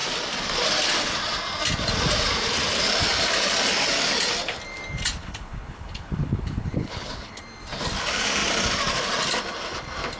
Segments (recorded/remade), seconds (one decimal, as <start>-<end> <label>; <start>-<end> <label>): 0.0-5.2 recorded; 5.2-7.4 remade; 7.4-10.2 recorded